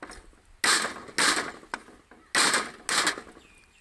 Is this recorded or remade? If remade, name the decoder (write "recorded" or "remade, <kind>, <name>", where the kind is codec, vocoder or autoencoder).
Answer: recorded